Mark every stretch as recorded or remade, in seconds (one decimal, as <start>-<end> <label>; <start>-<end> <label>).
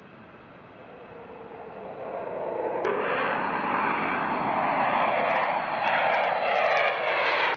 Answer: 0.0-7.6 recorded